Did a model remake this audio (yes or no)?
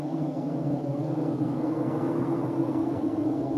yes